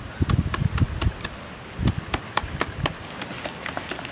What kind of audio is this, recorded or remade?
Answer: recorded